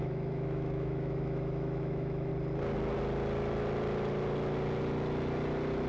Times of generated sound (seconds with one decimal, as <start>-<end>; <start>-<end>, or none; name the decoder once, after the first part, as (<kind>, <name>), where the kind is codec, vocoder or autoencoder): 0.0-2.3 (autoencoder, DAC-VAE)